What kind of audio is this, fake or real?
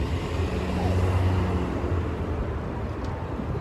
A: real